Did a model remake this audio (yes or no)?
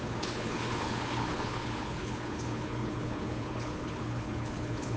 yes